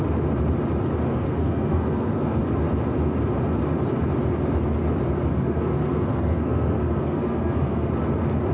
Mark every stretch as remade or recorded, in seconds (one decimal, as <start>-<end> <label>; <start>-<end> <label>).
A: 0.0-1.1 recorded; 1.1-2.4 remade; 2.4-5.3 recorded; 5.3-7.9 remade; 7.9-8.5 recorded